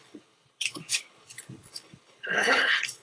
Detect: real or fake fake